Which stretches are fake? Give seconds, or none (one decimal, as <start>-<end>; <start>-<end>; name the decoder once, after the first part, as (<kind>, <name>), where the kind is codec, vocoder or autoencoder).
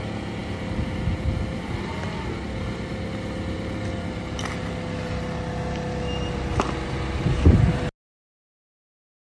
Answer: none